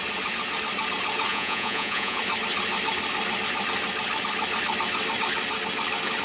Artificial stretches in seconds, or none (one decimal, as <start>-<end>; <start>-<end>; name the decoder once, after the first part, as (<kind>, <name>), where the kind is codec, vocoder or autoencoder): 1.3-2.2 (vocoder, Vocos)